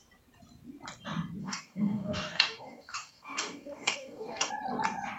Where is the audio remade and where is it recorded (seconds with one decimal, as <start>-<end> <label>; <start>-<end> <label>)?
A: 0.0-1.4 recorded; 1.4-4.5 remade; 4.5-5.2 recorded